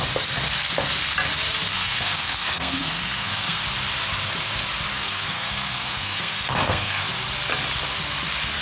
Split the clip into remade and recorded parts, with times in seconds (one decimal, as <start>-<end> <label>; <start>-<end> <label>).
0.0-1.7 recorded; 1.7-3.6 remade; 3.6-4.9 recorded; 4.9-7.0 remade; 7.0-8.6 recorded